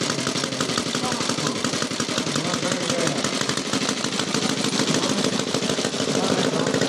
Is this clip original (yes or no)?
yes